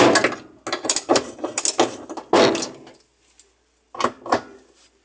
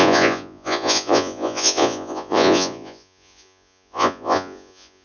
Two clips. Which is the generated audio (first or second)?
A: second